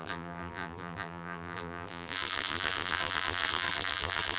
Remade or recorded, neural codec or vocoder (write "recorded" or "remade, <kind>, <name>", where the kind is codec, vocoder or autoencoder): remade, vocoder, BigVGAN v2